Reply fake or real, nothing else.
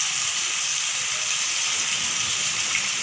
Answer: real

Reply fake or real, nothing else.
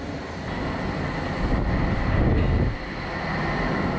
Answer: real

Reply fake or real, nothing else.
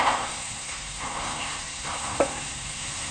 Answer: fake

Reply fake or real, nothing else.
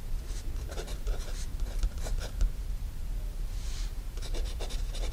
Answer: fake